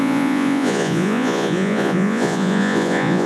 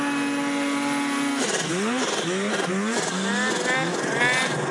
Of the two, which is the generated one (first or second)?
first